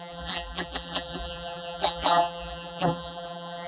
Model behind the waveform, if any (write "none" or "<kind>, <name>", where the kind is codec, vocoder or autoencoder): vocoder, BigVGAN v2